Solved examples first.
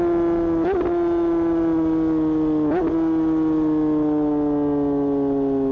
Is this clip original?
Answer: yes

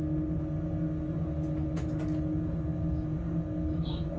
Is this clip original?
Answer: yes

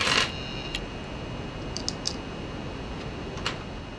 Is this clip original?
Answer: yes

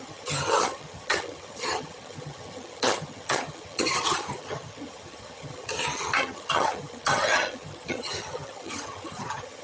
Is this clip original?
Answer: no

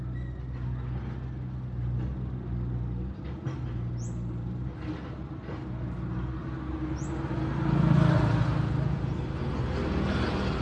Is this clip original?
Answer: yes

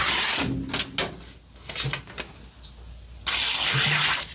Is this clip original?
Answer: yes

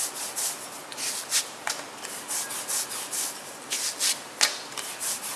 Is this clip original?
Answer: yes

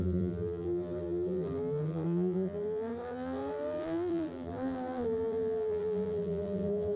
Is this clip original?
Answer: no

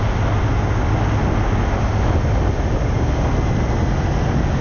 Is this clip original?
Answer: yes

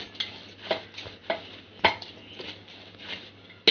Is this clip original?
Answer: yes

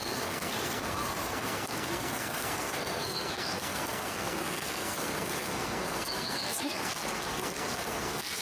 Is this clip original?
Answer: no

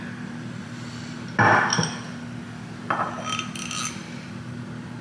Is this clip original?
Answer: yes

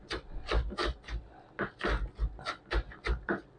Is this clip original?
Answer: yes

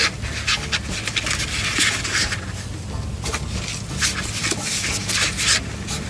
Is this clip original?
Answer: yes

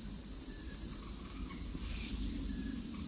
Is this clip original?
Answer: no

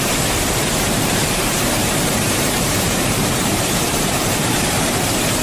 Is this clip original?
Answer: no